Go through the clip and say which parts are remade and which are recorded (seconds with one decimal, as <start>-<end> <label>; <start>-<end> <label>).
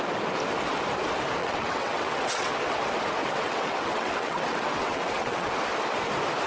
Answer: 0.0-1.4 recorded; 1.4-2.8 remade; 2.8-3.2 recorded; 3.2-5.5 remade; 5.5-6.5 recorded